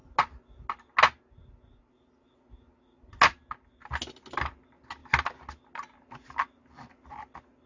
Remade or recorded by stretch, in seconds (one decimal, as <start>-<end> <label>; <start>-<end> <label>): 0.0-7.7 recorded